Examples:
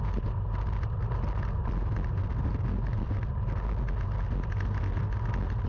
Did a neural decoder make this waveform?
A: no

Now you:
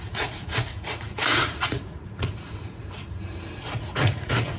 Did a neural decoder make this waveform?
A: yes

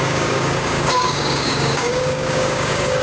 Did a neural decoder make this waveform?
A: yes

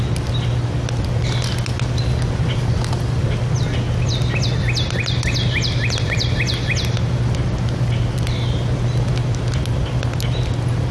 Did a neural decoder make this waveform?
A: no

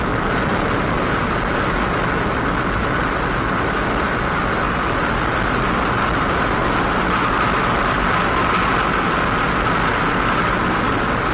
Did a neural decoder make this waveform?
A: no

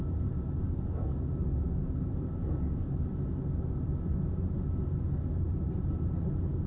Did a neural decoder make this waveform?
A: no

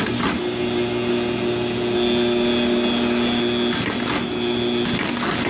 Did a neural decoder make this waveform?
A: no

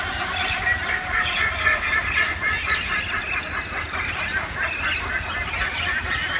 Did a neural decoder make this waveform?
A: no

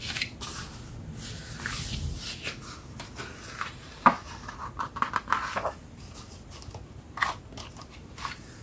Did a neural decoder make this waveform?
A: no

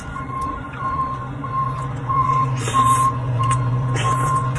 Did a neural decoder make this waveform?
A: yes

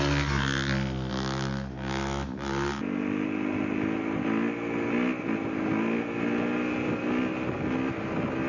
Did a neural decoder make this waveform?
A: no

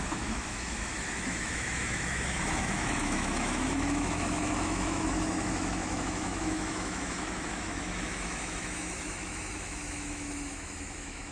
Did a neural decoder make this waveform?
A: yes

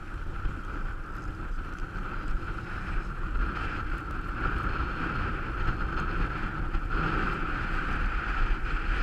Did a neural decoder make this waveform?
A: no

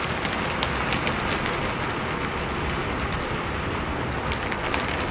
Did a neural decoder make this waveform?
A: no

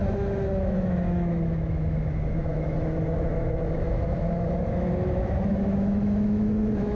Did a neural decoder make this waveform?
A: yes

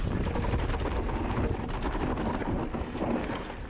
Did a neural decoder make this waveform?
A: no